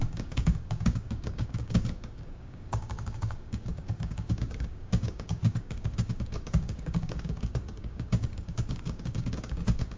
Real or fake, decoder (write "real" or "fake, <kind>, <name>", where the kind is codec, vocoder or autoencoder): fake, codec, DAC